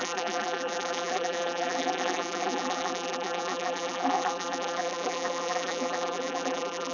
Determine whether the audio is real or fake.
fake